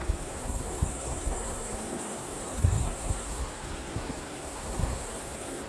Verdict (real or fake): fake